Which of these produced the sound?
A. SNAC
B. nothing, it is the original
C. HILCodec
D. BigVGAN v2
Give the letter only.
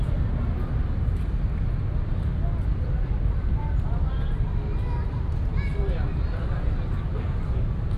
B